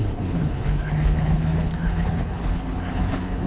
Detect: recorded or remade remade